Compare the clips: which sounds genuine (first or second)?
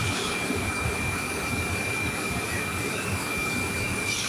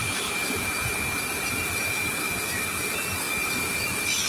second